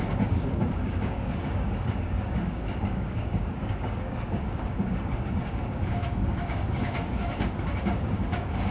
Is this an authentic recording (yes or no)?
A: no